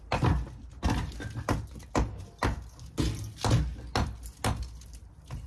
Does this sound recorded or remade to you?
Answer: recorded